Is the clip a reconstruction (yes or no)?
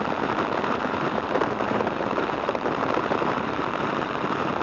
yes